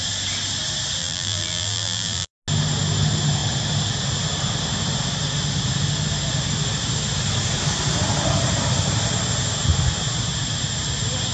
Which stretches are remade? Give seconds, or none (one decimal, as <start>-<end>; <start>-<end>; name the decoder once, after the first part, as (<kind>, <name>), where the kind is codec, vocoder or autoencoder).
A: 1.0-2.3 (vocoder, BigVGAN v2)